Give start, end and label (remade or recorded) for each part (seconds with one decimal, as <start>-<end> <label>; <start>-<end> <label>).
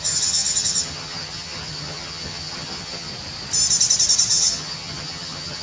0.0-3.1 remade; 3.1-4.3 recorded; 4.3-5.6 remade